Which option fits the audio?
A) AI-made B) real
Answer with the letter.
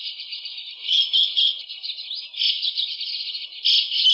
B